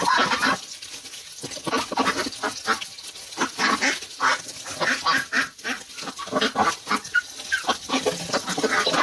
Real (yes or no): yes